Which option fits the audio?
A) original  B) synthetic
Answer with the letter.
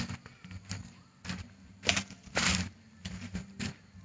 A